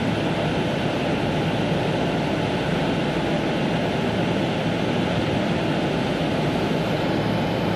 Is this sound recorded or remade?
recorded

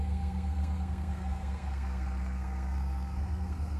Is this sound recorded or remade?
remade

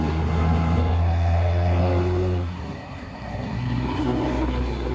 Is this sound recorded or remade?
remade